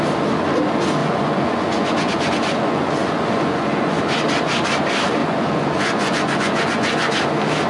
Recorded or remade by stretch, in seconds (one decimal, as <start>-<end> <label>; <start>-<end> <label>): 0.0-1.0 recorded; 1.0-4.0 remade; 4.0-5.2 recorded; 5.2-7.1 remade; 7.1-7.7 recorded